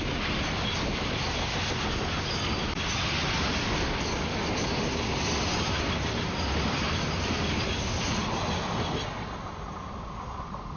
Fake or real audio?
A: real